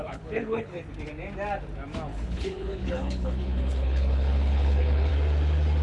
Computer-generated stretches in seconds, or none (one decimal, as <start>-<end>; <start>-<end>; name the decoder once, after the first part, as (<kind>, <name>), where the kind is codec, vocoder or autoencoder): 0.0-0.8 (codec, HILCodec); 2.1-5.1